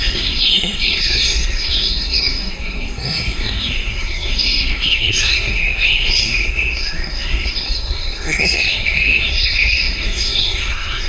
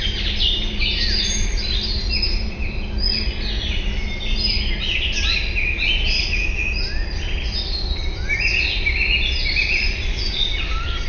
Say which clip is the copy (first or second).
first